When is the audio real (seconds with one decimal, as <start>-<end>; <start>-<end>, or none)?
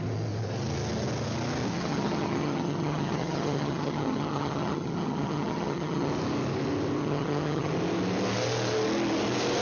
0.0-1.7; 6.1-7.0; 7.7-9.6